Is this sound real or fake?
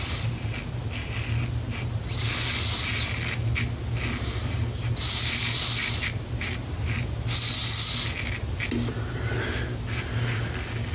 real